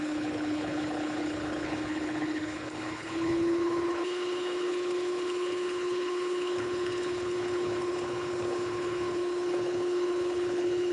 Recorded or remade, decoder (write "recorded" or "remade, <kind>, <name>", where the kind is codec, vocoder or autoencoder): remade, codec, HILCodec